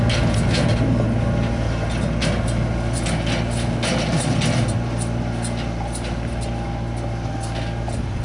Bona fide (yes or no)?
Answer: yes